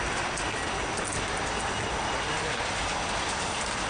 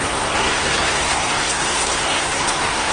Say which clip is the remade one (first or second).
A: second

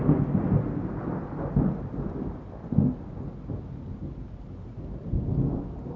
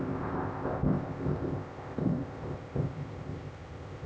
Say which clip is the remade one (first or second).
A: second